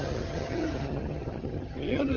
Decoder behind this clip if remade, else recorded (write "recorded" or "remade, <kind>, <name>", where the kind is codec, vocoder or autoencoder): remade, vocoder, HiFi-GAN